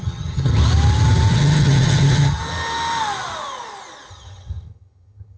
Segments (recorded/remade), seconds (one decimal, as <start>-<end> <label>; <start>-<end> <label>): 0.0-0.5 remade; 0.5-1.3 recorded; 1.3-2.4 remade; 2.4-4.1 recorded; 4.1-5.4 remade